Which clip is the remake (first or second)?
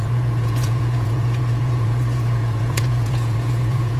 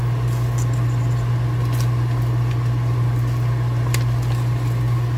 first